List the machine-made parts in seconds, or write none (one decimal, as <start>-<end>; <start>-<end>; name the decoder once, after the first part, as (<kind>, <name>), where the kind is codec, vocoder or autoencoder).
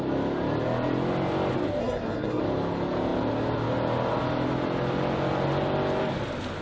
1.8-2.4 (codec, SNAC)